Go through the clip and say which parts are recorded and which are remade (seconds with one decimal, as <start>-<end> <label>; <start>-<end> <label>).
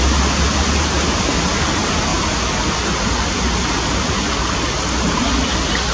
0.0-5.9 recorded